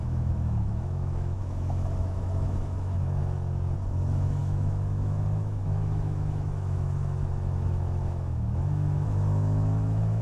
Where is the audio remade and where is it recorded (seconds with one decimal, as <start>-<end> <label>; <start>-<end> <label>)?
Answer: 0.0-3.2 remade; 3.2-3.9 recorded; 3.9-10.2 remade

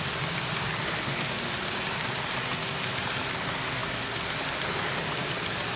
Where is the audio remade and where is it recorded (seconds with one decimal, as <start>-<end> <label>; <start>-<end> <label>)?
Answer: 0.0-5.8 recorded

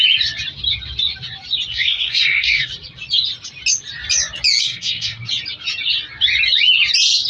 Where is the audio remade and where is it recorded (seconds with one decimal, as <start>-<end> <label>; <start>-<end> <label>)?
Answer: 0.0-1.7 recorded; 1.7-2.7 remade; 2.7-4.6 recorded; 4.6-5.2 remade; 5.2-7.3 recorded